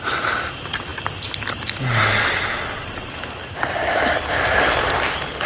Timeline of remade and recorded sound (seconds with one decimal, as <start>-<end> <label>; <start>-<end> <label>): 0.0-5.5 recorded

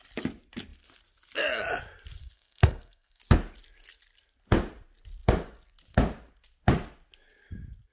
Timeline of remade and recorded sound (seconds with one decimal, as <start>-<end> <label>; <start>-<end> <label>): 0.0-2.2 recorded; 2.2-3.2 remade; 3.2-7.9 recorded

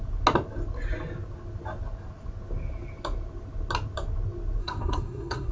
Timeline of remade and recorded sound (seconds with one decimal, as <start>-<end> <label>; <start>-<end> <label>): 0.0-4.6 recorded; 4.6-5.5 remade

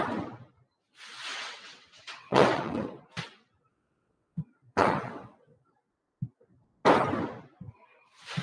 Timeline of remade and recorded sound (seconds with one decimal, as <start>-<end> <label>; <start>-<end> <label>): 0.0-1.3 recorded; 1.3-3.0 remade; 3.0-3.7 recorded; 3.7-5.7 remade; 5.7-8.4 recorded

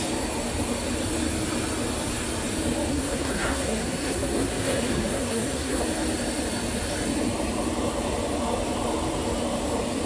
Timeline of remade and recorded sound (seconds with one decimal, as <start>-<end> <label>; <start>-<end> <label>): 0.0-2.9 recorded; 2.9-5.8 remade; 5.8-10.1 recorded

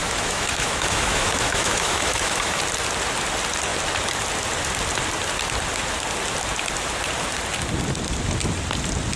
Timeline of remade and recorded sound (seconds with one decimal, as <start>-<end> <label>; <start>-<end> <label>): 0.0-2.6 remade; 2.6-9.2 recorded

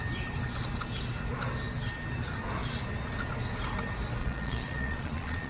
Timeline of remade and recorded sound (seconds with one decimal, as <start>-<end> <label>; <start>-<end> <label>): 0.0-4.2 recorded; 4.2-5.5 remade